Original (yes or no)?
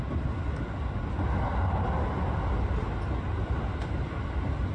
yes